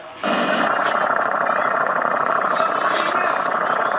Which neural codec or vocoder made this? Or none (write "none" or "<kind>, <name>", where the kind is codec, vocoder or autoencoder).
vocoder, Vocos